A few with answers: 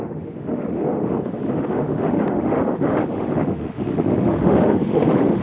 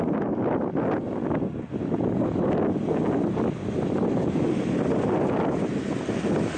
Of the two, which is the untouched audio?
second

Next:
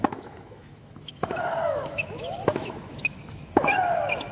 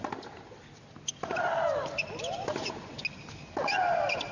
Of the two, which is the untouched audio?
second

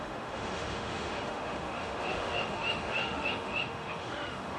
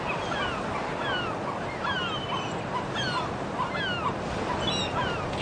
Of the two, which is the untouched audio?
second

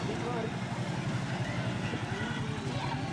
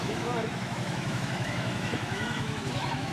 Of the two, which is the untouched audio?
first